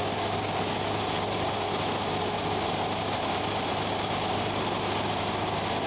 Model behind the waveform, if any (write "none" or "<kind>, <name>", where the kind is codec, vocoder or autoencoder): none